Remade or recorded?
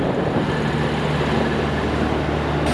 recorded